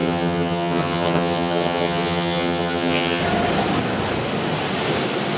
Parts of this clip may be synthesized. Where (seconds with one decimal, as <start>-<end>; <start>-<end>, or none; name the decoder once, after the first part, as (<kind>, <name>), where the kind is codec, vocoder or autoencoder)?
0.0-3.2 (vocoder, HiFi-GAN)